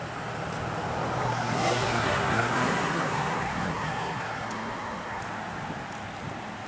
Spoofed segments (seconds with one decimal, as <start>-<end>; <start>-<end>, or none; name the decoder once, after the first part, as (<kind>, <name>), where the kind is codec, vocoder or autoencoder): 1.2-5.2 (codec, SNAC)